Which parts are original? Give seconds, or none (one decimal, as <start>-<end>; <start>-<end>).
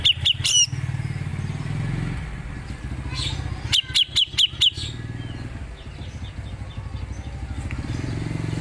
0.0-8.6